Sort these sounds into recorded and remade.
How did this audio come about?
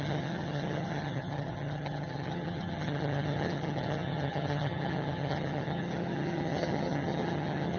remade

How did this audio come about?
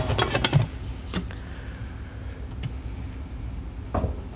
recorded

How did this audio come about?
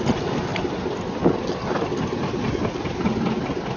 recorded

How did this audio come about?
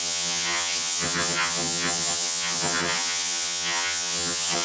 remade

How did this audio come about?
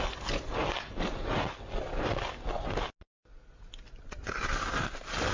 recorded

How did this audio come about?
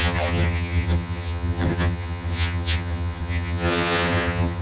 remade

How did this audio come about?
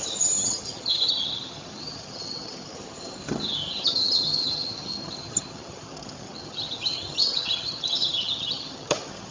remade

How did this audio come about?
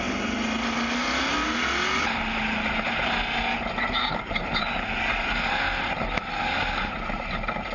recorded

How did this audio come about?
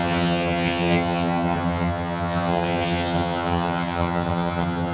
remade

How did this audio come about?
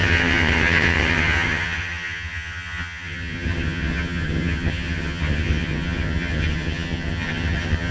remade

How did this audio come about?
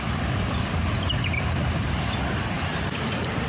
recorded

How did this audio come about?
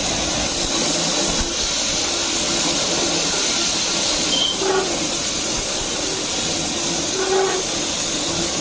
recorded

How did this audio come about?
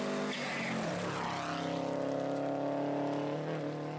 recorded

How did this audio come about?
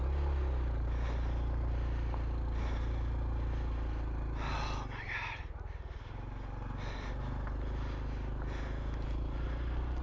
recorded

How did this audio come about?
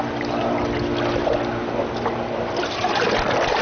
recorded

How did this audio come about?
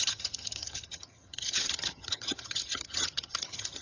remade